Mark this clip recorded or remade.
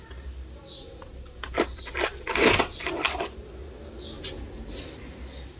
recorded